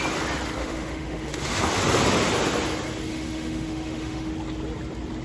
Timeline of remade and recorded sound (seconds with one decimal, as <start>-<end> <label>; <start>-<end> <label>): 0.0-0.6 recorded; 0.6-1.6 remade; 1.6-3.1 recorded; 3.1-4.3 remade; 4.3-5.2 recorded